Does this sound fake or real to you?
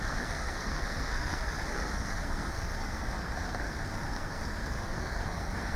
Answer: fake